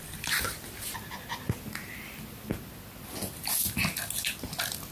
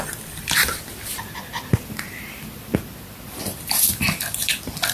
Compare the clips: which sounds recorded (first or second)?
first